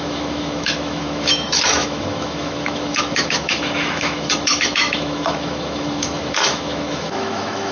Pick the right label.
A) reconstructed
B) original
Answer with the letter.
A